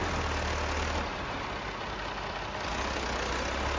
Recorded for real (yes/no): yes